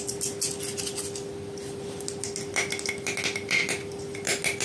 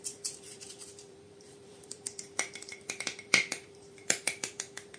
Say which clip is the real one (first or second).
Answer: first